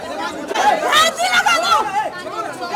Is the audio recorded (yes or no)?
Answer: yes